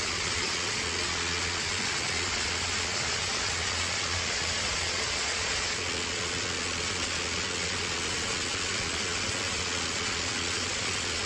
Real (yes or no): no